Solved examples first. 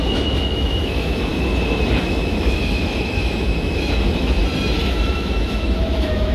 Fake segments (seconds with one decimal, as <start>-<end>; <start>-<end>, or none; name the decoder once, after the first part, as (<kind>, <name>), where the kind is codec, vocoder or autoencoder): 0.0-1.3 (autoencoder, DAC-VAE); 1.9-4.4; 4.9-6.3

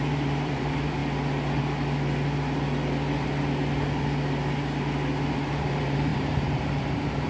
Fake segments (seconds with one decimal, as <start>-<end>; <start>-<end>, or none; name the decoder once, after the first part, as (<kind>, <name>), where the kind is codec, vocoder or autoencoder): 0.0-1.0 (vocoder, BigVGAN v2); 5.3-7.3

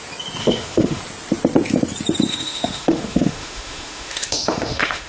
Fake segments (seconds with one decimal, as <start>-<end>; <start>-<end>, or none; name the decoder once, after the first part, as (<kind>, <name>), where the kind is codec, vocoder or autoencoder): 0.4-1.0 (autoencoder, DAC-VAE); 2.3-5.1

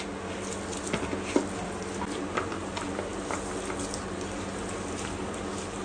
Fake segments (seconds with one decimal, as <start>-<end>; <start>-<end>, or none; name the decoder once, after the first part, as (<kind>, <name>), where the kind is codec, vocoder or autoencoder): none

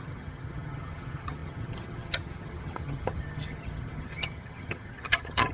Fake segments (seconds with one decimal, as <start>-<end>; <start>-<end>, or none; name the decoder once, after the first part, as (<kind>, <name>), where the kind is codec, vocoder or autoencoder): 0.0-5.5 (vocoder, HiFi-GAN)